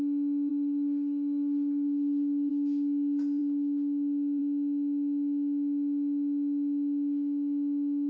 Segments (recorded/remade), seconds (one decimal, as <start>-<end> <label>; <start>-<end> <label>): 0.0-0.5 recorded; 0.5-2.5 remade; 2.5-8.1 recorded